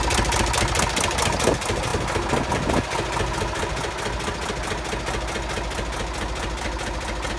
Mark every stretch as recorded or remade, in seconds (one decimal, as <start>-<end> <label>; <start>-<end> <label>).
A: 0.0-7.4 recorded